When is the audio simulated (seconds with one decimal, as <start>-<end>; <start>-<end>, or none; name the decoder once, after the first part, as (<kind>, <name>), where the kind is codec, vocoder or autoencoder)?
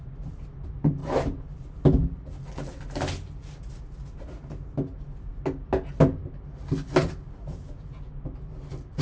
none